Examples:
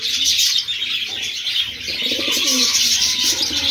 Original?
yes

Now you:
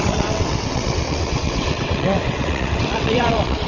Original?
no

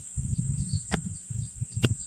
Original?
no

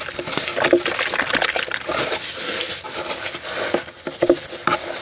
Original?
yes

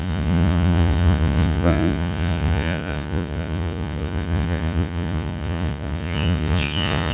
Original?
no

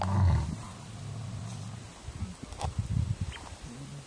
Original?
yes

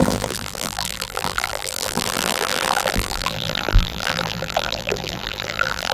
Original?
no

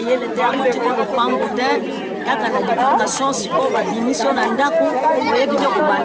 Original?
yes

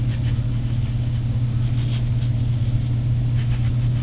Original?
yes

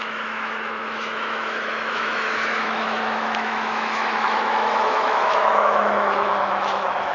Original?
no